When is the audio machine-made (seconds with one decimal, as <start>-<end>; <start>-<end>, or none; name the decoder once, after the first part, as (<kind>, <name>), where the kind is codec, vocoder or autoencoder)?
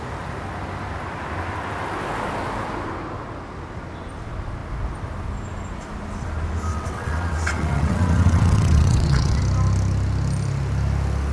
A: 6.7-9.4 (vocoder, WaveNeXt)